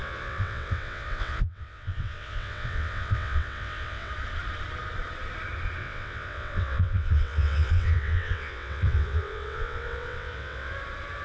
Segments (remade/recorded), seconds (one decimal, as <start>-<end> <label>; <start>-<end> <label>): 0.0-4.1 remade; 4.1-5.8 recorded; 5.8-10.7 remade; 10.7-11.2 recorded